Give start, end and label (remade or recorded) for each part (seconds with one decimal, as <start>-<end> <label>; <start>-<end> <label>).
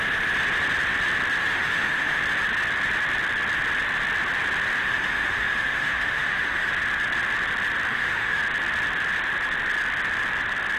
0.0-1.4 recorded; 1.4-2.2 remade; 2.2-4.8 recorded; 4.8-6.7 remade; 6.7-7.9 recorded; 7.9-8.4 remade; 8.4-10.8 recorded